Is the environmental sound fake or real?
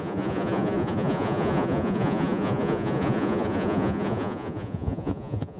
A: fake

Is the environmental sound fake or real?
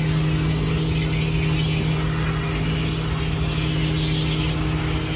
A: real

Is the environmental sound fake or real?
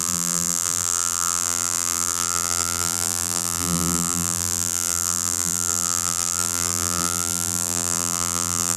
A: fake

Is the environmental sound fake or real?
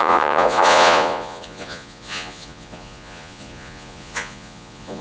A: fake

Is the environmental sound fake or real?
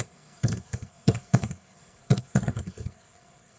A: fake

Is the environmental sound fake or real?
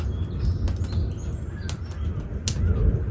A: real